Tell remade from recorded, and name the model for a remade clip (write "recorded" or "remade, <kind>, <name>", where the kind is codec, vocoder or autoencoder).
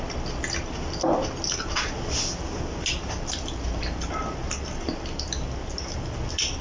recorded